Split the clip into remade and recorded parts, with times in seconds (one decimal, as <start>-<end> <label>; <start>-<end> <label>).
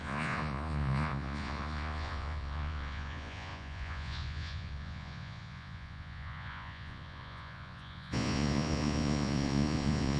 0.0-10.2 remade